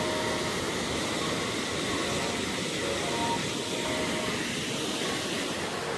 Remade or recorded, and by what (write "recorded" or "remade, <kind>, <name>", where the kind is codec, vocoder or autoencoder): recorded